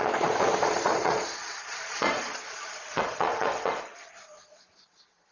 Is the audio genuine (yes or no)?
no